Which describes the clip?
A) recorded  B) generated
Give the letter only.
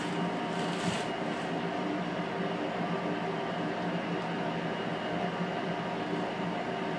A